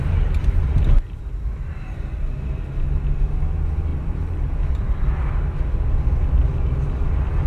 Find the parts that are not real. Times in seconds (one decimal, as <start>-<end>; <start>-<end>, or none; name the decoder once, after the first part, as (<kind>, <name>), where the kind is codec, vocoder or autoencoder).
none